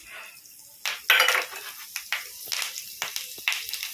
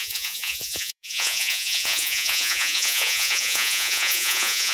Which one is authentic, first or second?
first